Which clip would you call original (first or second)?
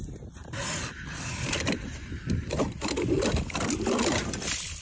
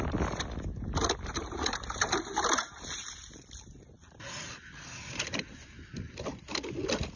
second